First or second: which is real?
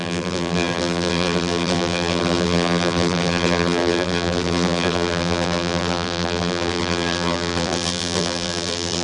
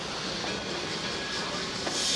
second